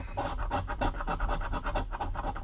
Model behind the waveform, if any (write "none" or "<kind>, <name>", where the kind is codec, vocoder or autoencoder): none